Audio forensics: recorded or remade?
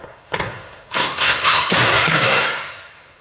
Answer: remade